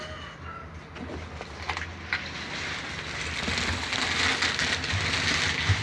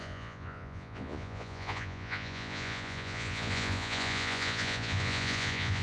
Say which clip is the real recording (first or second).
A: first